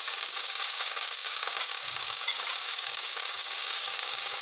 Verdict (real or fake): fake